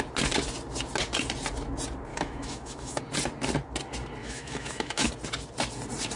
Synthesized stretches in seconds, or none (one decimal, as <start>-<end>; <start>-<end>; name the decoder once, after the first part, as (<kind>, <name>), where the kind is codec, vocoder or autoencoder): 2.1-3.0 (autoencoder, DAC-VAE); 4.2-5.1